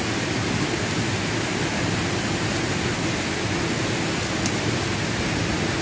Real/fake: real